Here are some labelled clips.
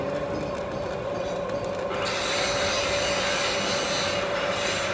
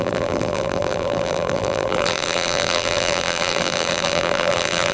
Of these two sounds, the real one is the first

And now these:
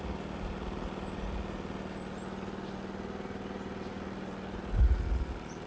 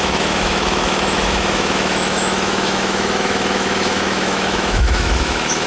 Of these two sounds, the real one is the first